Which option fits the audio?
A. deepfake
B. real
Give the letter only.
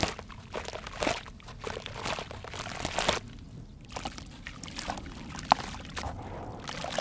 B